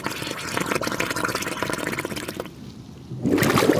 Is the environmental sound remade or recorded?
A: recorded